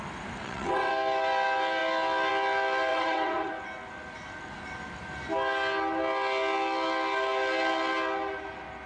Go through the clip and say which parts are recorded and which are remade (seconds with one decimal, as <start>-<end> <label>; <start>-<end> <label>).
0.0-0.4 recorded; 0.4-0.9 remade; 0.9-2.9 recorded; 2.9-3.5 remade; 3.5-8.9 recorded